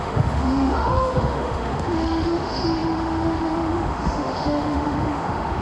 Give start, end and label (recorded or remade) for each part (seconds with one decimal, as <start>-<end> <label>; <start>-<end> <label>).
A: 0.0-5.6 remade